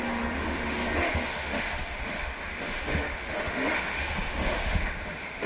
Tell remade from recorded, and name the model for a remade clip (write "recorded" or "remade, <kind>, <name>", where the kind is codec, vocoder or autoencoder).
remade, autoencoder, DAC-VAE